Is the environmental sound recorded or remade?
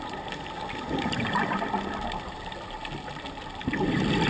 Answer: recorded